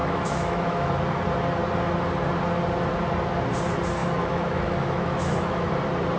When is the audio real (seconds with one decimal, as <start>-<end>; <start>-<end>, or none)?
0.9-4.0; 5.7-6.2